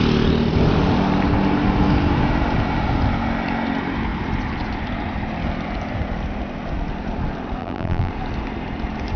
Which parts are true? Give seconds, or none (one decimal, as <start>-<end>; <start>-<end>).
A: 0.0-7.6; 8.1-9.2